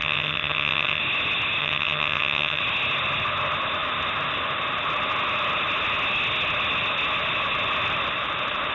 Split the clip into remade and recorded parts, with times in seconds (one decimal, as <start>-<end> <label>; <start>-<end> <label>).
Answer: 0.0-1.0 remade; 1.0-1.6 recorded; 1.6-2.6 remade; 2.6-8.7 recorded